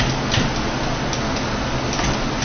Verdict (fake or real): real